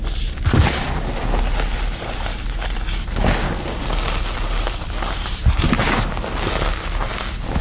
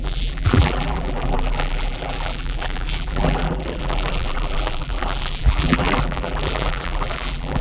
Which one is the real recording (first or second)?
first